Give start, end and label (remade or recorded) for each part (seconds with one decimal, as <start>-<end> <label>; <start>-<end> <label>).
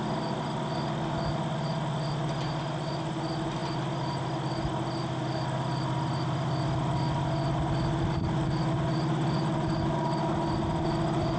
0.0-11.4 recorded